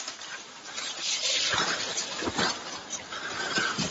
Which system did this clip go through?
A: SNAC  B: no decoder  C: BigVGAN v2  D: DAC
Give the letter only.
C